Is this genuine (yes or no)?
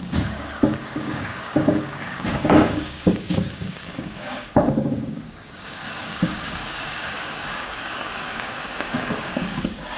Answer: no